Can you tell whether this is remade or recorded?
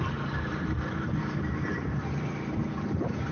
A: remade